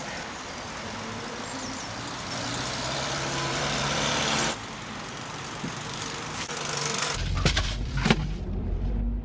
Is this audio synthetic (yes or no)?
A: yes